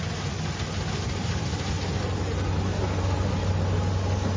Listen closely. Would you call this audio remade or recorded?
recorded